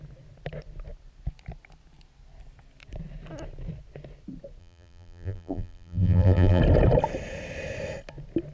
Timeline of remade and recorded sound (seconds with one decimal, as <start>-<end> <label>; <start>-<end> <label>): 0.0-4.6 recorded; 4.6-6.6 remade; 6.6-8.5 recorded